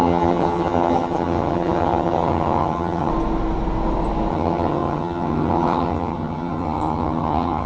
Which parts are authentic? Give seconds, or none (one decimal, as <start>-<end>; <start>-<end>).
3.1-4.3